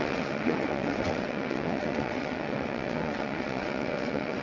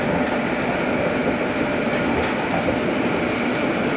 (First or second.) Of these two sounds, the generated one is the first